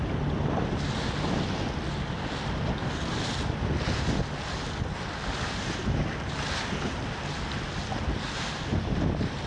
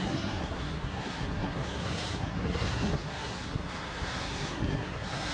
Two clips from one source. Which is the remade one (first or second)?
second